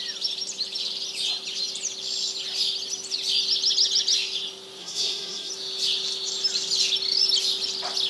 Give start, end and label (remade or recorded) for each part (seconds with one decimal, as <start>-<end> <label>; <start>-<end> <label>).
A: 0.0-4.8 recorded; 4.8-5.5 remade; 5.5-8.1 recorded